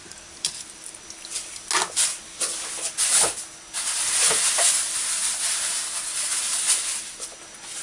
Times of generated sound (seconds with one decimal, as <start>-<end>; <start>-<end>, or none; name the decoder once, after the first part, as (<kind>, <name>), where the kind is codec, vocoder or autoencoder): 0.0-1.0 (vocoder, BigVGAN v2)

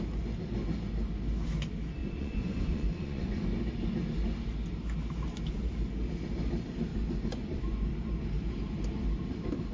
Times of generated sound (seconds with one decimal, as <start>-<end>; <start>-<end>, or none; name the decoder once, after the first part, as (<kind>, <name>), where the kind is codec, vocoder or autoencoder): 2.0-3.4 (vocoder, Vocos); 6.9-7.9

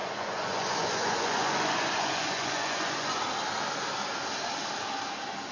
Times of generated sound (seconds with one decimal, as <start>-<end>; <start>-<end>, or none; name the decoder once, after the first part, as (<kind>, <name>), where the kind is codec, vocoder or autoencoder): 0.0-3.2 (vocoder, Vocos)

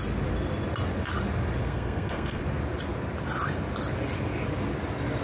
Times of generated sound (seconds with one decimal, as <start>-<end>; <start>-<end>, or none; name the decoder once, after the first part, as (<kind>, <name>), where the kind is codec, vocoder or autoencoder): 1.6-2.4 (codec, SNAC)

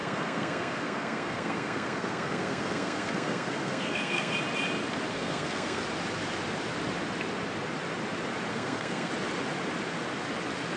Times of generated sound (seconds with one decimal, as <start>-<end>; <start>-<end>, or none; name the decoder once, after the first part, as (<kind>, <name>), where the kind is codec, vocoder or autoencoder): 0.0-4.3 (codec, SNAC); 5.1-5.8; 8.5-9.1